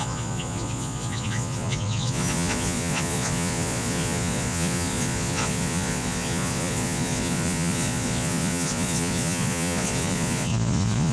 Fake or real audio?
fake